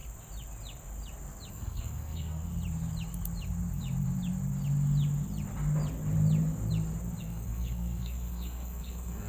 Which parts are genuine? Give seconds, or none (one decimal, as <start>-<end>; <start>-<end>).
0.0-1.5; 2.5-7.2